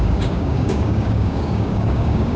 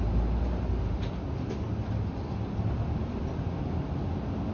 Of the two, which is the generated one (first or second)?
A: first